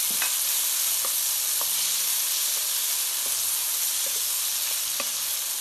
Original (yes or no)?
yes